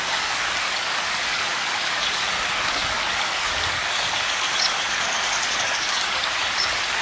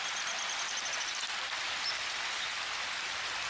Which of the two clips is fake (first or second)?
first